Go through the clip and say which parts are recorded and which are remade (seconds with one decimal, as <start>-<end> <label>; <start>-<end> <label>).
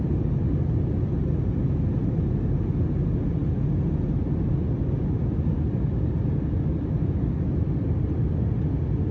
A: 0.0-9.1 recorded